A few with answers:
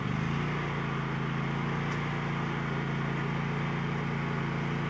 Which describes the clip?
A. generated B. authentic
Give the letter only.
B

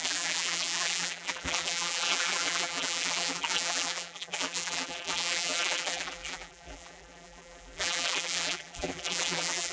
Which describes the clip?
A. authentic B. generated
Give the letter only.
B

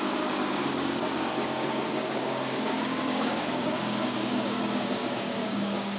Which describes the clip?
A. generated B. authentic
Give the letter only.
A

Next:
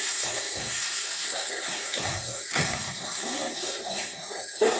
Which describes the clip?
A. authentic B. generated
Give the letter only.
B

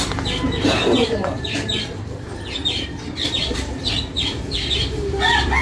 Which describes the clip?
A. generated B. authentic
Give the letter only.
A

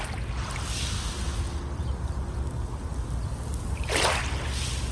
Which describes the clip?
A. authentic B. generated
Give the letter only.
A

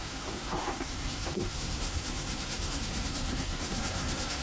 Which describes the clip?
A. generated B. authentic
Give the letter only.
A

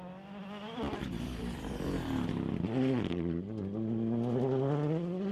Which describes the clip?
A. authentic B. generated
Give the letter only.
A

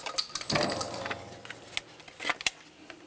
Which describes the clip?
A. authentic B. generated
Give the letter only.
A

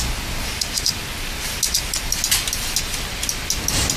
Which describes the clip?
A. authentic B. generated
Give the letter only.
A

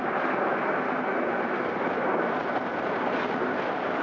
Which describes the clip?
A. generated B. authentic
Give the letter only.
B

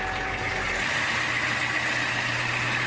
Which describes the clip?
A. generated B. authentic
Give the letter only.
A